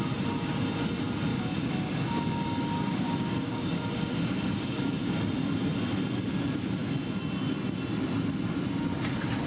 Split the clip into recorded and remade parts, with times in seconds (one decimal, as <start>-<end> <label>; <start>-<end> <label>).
0.0-1.3 recorded; 1.3-5.1 remade; 5.1-9.5 recorded